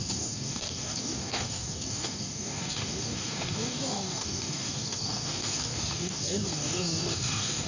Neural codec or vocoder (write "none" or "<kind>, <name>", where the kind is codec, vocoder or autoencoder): codec, DAC